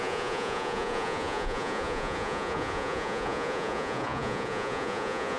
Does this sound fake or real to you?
fake